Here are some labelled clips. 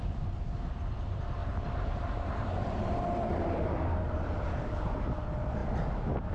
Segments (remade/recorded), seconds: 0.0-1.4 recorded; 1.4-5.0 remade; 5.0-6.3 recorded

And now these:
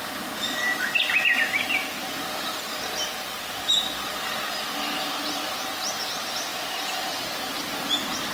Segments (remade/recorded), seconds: 0.0-2.0 recorded; 2.0-5.7 remade; 5.7-6.5 recorded; 6.5-8.3 remade

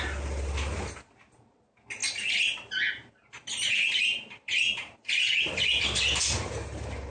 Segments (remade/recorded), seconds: 0.0-7.1 recorded

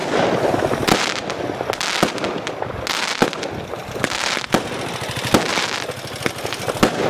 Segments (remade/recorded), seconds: 0.0-7.1 recorded

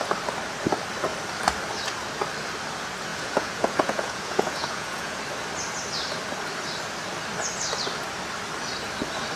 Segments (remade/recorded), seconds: 0.0-3.1 recorded; 3.1-5.2 remade; 5.2-9.4 recorded

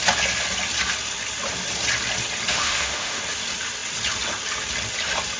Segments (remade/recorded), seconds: 0.0-2.5 recorded; 2.5-3.2 remade; 3.2-5.4 recorded

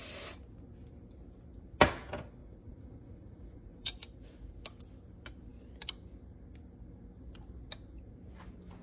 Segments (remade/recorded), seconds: 0.0-2.4 recorded; 2.4-3.9 remade; 3.9-8.8 recorded

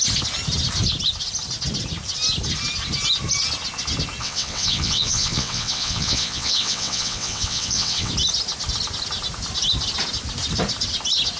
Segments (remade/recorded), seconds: 0.0-4.2 recorded; 4.2-8.1 remade; 8.1-11.4 recorded